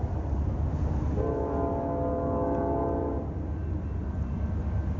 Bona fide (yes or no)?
yes